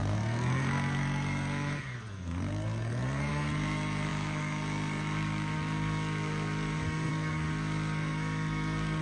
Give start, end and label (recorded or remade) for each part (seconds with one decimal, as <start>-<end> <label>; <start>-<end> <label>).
0.0-9.0 remade